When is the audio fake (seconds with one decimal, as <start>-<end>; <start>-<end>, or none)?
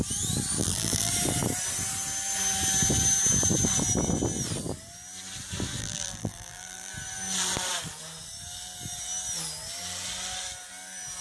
0.6-1.1; 5.8-6.9